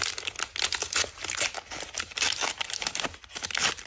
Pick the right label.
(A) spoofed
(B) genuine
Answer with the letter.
B